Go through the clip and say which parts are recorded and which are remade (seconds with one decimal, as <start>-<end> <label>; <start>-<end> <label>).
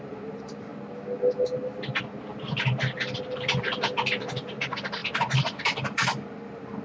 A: 0.0-0.7 remade; 0.7-2.0 recorded; 2.0-6.8 remade